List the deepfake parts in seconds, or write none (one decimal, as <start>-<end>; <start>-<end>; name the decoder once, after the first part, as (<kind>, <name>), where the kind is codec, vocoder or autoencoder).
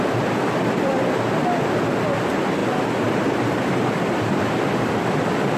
none